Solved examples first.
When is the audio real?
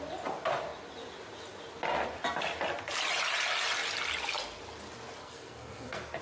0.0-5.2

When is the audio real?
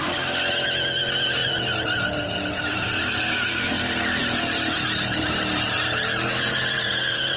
0.0-1.4; 3.6-4.2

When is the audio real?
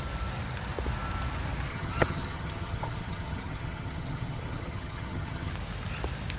0.0-1.7; 5.5-6.4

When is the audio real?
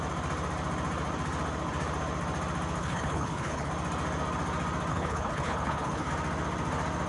0.0-2.8; 3.7-4.9; 6.1-7.1